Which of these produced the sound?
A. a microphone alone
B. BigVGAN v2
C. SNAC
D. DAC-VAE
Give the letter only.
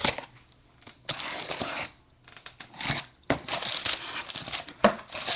A